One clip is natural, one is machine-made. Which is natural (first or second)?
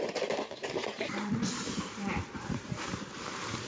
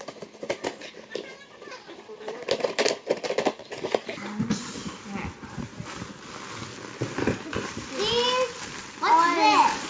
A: second